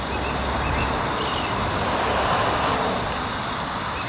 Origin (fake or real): real